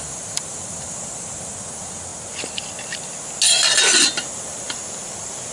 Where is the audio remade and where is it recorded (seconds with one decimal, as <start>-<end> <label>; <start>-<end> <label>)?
0.0-2.1 remade; 2.1-5.5 recorded